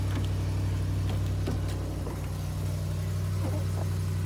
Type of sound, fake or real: real